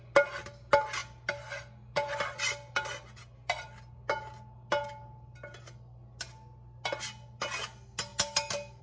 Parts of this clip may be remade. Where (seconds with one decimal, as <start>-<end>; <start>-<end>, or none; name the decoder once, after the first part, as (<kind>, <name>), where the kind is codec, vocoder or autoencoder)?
none